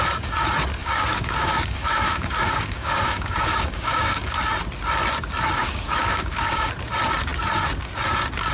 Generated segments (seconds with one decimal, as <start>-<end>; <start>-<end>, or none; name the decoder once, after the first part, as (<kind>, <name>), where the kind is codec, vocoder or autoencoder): 0.8-4.4 (codec, DAC); 5.6-6.7